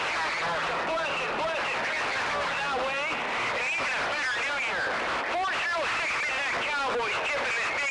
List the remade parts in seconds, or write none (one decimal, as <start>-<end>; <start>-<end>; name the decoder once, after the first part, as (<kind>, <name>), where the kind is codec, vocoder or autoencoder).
none